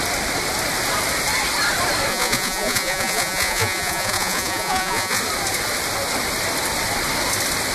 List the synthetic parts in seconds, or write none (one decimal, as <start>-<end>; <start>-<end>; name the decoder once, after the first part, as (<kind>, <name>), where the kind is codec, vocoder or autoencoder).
2.1-5.2 (vocoder, Vocos)